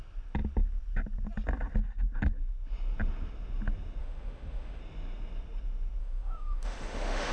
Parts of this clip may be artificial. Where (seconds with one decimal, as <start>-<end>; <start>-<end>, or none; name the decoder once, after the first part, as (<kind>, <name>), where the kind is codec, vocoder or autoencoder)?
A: 4.0-4.8 (autoencoder, DAC-VAE); 6.0-7.3